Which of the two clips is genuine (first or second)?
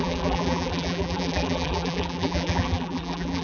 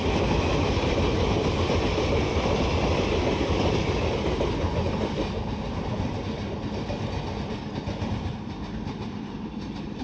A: second